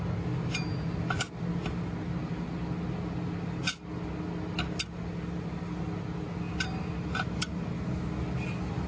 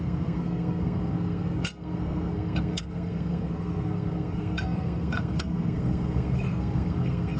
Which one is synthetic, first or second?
second